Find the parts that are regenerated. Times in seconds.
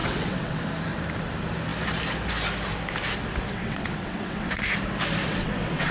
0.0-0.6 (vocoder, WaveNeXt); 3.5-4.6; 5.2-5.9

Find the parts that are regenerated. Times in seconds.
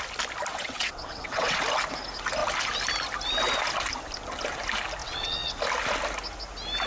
0.5-1.6 (vocoder, WaveNeXt); 5.0-5.6